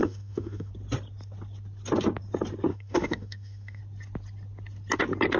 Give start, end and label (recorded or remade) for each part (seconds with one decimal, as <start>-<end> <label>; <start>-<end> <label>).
0.0-0.7 remade; 0.7-2.7 recorded; 2.7-3.8 remade; 3.8-5.4 recorded